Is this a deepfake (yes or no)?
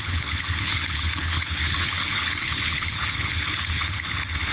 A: yes